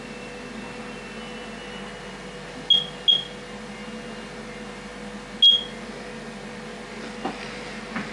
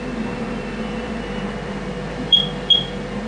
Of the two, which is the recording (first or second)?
first